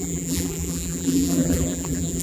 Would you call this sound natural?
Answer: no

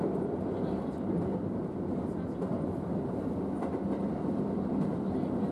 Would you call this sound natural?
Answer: yes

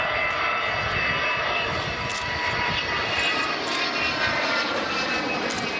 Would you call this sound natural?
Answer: yes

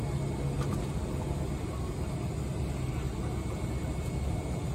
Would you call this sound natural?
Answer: yes